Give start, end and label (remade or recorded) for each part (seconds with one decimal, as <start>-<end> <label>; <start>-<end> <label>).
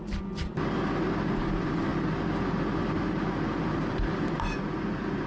0.0-5.3 recorded